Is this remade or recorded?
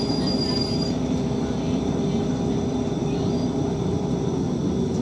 remade